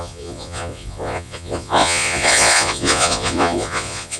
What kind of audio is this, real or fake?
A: fake